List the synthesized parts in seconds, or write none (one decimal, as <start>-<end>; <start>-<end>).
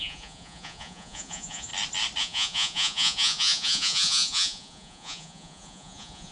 0.0-1.7; 2.2-6.3